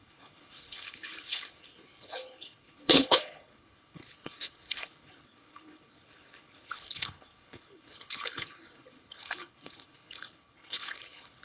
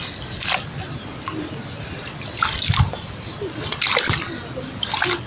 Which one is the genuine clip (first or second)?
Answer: second